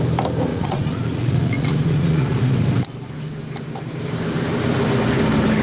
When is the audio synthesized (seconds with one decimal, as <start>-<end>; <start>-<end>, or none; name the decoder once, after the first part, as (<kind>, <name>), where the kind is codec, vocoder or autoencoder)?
0.5-2.9 (vocoder, Vocos)